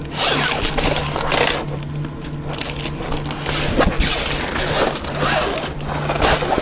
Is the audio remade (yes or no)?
no